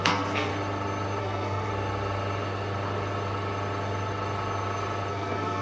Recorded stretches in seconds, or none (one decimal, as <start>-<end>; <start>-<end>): 0.5-1.2; 1.7-5.1